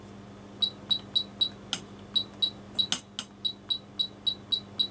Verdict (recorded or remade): recorded